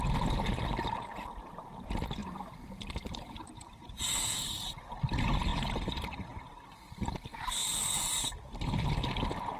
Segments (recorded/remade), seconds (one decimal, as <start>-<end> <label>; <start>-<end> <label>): 0.0-2.2 recorded; 2.2-4.0 remade; 4.0-5.5 recorded; 5.5-6.9 remade; 6.9-9.6 recorded